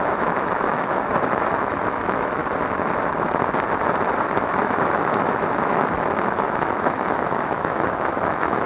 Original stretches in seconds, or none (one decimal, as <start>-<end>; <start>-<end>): 2.4-4.1